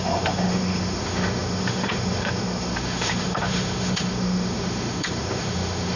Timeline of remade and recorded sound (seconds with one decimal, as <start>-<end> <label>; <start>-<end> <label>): 0.0-6.0 remade